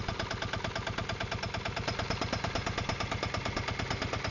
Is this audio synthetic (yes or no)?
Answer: no